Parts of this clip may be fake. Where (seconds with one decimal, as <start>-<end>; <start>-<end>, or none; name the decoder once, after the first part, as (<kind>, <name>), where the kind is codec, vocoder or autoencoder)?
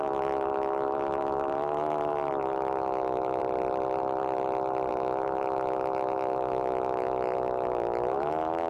0.0-3.4 (autoencoder, DAC-VAE); 4.9-8.7